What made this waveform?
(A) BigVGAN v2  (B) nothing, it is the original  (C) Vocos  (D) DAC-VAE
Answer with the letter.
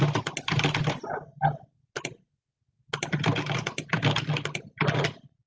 B